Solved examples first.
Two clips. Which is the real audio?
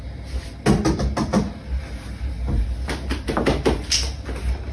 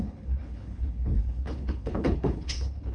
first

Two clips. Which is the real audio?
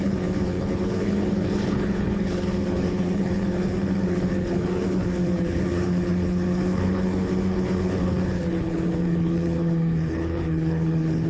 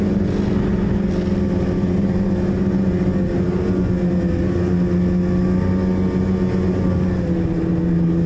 second